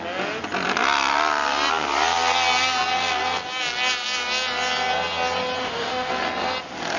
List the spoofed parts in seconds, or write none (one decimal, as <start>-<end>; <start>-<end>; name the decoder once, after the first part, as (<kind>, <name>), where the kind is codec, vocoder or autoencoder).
5.6-6.1 (autoencoder, DAC-VAE)